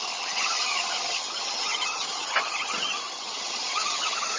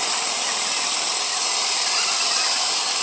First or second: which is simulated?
first